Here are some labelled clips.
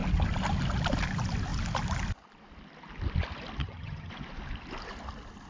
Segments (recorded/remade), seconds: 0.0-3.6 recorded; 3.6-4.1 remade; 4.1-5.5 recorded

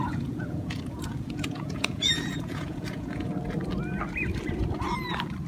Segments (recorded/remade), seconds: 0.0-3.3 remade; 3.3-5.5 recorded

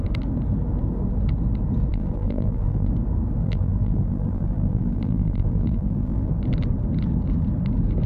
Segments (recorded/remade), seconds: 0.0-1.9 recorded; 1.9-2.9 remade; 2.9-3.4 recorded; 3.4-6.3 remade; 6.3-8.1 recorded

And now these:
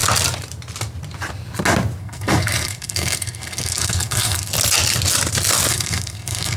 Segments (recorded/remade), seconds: 0.0-2.0 recorded; 2.0-4.5 remade; 4.5-5.7 recorded; 5.7-6.6 remade

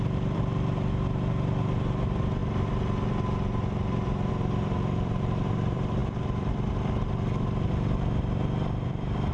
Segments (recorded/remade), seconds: 0.0-9.3 remade

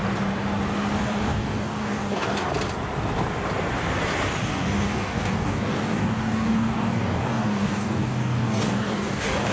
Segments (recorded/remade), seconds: 0.0-1.0 recorded; 1.0-2.5 remade; 2.5-4.4 recorded; 4.4-9.5 remade